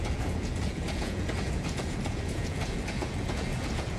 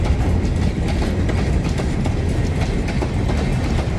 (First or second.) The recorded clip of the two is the second